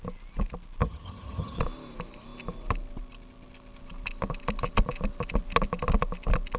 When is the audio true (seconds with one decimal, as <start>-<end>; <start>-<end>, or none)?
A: 0.0-0.8; 1.6-6.6

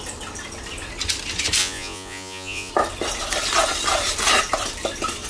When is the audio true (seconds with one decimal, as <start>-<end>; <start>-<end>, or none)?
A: 0.0-1.6; 2.7-5.3

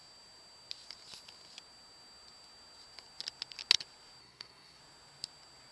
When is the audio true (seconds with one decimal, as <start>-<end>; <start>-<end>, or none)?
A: 0.0-4.2; 4.8-5.7

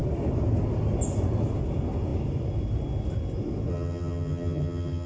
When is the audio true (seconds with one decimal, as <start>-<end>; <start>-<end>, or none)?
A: 0.0-3.7

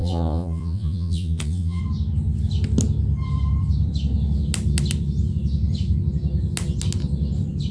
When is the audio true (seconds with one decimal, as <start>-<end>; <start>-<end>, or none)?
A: 1.8-7.7

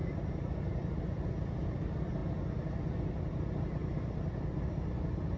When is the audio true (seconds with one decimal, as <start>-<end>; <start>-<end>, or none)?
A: 0.0-5.4

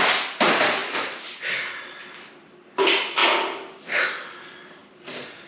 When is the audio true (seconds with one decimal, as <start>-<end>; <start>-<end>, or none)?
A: 0.0-5.5

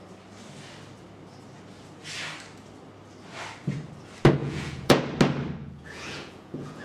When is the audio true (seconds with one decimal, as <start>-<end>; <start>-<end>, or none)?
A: 0.0-4.4; 5.0-5.6